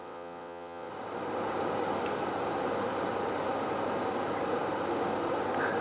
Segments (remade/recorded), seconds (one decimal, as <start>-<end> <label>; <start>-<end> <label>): 0.0-0.9 remade; 0.9-5.8 recorded